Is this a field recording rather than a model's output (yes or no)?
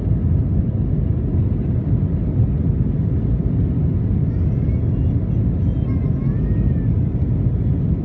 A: yes